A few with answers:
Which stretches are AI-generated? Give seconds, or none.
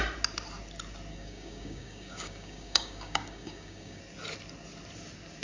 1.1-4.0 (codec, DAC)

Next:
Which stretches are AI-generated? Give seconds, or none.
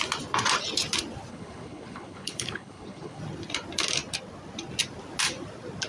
1.3-3.2 (codec, HILCodec)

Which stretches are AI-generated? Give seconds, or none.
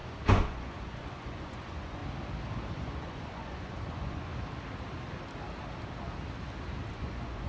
0.0-2.0 (vocoder, Vocos); 2.7-4.3; 6.9-7.5